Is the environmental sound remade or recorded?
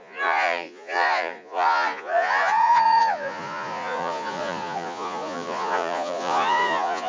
remade